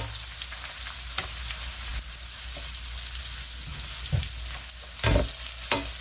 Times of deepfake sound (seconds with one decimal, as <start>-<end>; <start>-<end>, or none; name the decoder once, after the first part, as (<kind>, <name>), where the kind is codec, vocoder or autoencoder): none